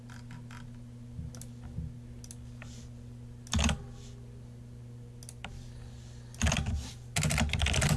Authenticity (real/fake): real